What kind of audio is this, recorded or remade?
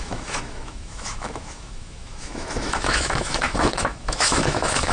remade